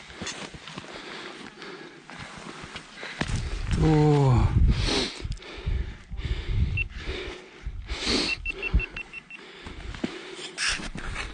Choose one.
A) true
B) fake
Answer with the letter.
A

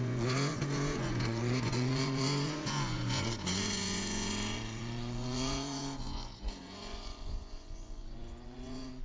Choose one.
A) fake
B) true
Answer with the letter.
A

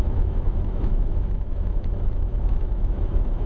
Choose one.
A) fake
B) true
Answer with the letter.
A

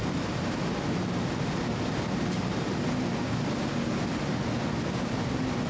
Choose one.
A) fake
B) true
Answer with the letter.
B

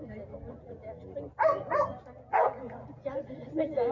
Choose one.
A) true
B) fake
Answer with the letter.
A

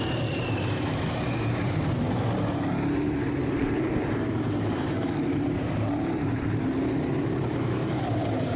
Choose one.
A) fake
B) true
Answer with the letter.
A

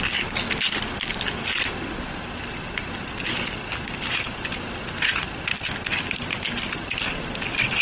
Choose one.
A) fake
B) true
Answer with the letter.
B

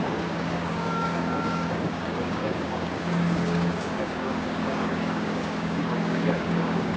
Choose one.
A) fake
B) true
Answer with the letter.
A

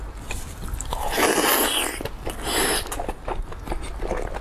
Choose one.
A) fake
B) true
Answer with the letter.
B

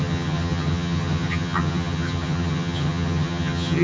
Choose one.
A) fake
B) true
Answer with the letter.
A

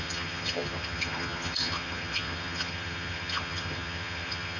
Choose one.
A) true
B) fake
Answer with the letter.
B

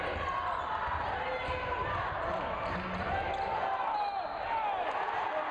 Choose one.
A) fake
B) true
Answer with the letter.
B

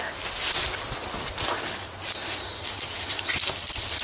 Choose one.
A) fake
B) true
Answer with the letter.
B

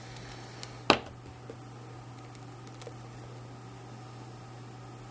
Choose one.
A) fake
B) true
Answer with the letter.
B